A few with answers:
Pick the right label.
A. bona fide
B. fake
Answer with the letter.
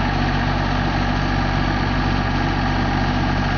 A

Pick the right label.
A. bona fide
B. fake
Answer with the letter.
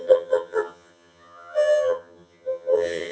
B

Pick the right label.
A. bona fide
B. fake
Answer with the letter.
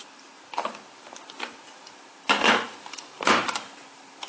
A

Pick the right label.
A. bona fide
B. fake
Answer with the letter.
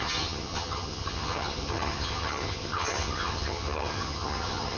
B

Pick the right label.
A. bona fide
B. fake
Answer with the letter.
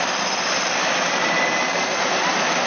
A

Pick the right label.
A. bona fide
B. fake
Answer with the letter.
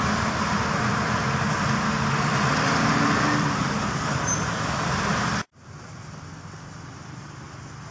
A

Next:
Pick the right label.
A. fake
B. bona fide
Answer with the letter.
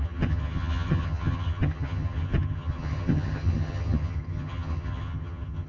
A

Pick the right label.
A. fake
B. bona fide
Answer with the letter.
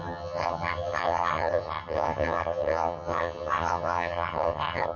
A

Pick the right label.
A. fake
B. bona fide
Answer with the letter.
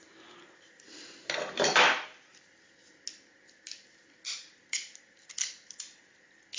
B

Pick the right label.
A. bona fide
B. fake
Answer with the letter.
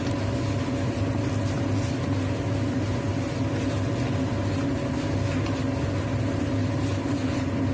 A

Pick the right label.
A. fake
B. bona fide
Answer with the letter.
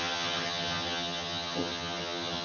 A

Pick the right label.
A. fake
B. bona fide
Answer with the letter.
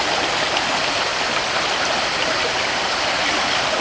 B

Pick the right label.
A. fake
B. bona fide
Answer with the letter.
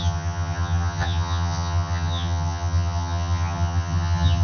A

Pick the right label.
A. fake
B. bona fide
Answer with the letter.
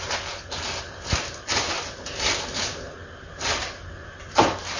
B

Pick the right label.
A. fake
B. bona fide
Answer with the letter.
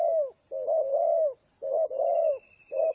B